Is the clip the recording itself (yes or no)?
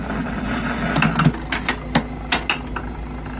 yes